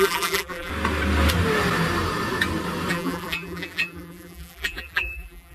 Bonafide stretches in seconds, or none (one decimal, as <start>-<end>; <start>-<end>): 0.7-2.9